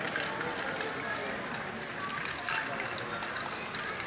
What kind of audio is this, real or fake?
real